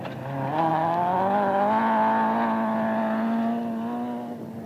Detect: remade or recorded recorded